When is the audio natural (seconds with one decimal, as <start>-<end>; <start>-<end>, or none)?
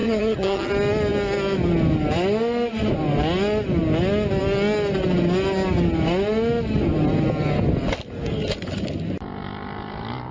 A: 0.7-10.3